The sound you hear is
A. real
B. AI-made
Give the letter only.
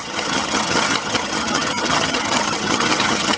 B